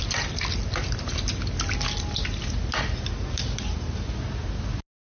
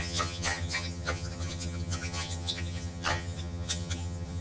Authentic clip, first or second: first